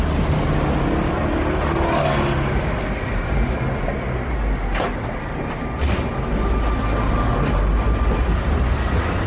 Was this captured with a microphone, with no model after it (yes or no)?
yes